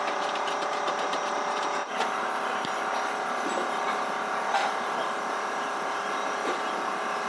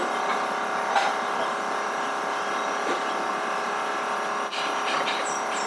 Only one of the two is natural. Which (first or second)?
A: second